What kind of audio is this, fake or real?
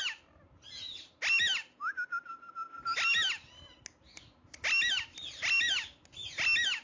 real